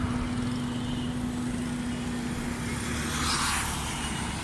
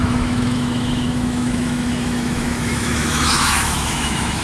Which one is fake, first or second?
second